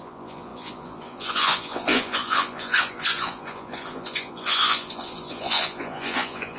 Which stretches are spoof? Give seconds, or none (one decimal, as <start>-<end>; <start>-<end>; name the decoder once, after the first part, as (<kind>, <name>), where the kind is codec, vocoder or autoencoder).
0.0-6.6 (vocoder, Vocos)